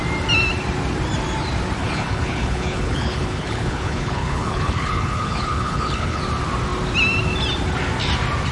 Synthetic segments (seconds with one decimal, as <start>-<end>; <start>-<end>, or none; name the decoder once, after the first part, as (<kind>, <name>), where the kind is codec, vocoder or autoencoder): 1.8-6.2 (codec, HILCodec)